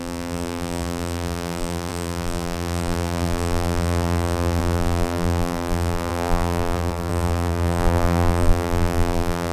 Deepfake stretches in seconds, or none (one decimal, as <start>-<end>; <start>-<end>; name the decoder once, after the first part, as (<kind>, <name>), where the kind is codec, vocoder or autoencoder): 0.0-9.5 (vocoder, BigVGAN v2)